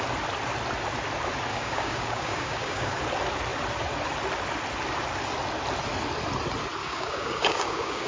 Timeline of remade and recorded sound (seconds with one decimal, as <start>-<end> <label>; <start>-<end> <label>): 0.0-1.5 recorded; 1.5-3.0 remade; 3.0-6.8 recorded; 6.8-8.1 remade